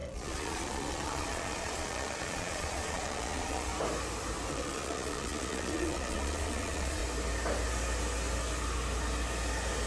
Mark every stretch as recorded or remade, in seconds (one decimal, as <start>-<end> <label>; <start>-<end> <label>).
0.0-3.7 remade; 3.7-4.5 recorded; 4.5-7.0 remade; 7.0-9.9 recorded